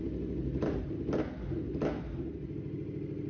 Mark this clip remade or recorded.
recorded